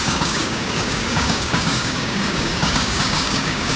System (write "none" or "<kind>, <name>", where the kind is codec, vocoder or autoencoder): codec, DAC